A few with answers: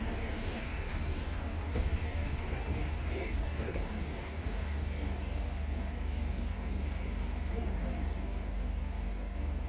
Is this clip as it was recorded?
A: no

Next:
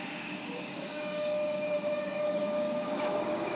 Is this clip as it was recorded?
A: no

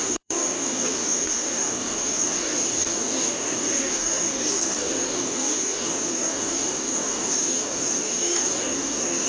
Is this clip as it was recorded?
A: no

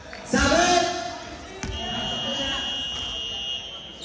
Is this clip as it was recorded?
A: yes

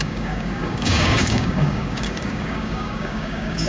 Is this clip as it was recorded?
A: no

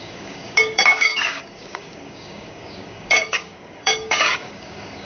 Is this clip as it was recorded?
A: no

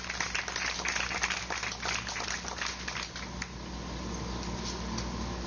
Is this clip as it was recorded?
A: yes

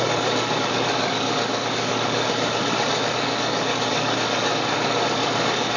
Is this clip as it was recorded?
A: no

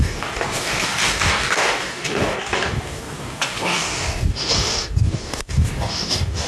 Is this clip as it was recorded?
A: no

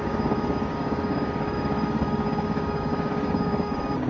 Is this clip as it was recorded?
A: no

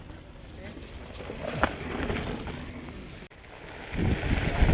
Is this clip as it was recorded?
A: yes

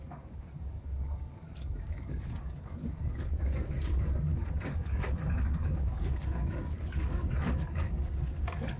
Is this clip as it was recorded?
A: no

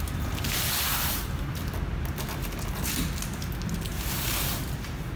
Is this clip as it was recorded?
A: yes